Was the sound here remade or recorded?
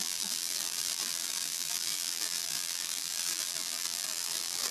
remade